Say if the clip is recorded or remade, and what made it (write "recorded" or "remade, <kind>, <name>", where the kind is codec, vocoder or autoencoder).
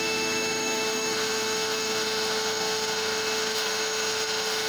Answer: remade, autoencoder, DAC-VAE